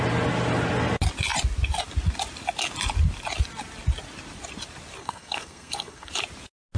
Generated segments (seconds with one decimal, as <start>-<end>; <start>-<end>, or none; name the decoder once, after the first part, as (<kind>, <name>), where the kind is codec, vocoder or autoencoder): 5.0-6.1 (codec, SNAC)